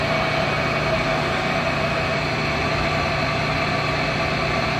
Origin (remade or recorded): recorded